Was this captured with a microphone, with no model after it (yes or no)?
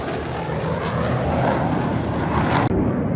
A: yes